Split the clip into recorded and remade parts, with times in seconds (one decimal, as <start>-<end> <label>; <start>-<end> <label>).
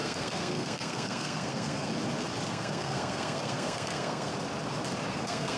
0.0-1.9 remade; 1.9-2.5 recorded; 2.5-4.3 remade; 4.3-5.1 recorded; 5.1-5.6 remade